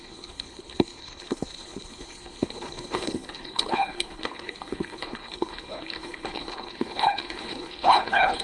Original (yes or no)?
no